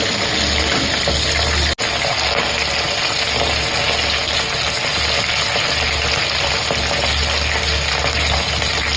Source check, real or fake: real